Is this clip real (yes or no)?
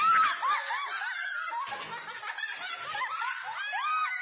yes